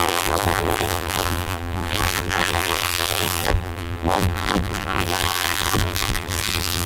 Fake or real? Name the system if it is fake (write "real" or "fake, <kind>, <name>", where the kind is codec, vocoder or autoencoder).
fake, vocoder, BigVGAN v2